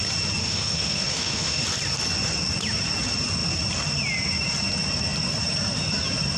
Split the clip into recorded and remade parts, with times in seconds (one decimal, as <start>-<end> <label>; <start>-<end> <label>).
0.0-0.4 recorded; 0.4-1.6 remade; 1.6-6.4 recorded